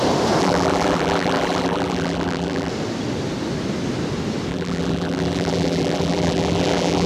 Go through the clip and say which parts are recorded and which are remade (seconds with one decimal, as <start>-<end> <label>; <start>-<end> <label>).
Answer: 0.0-0.4 recorded; 0.4-2.7 remade; 2.7-4.5 recorded; 4.5-7.1 remade